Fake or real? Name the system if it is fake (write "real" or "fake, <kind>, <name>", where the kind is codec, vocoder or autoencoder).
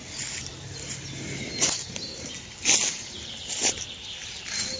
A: real